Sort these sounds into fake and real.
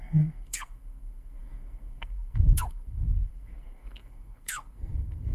fake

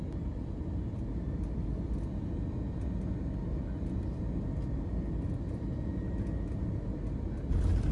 real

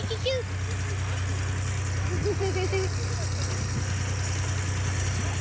real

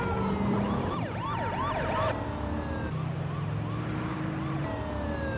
real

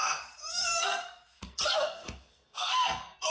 fake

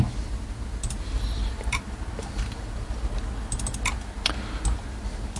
real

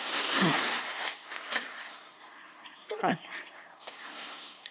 fake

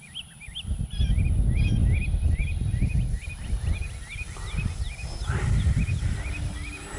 real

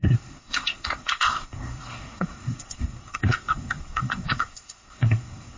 fake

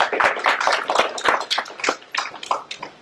real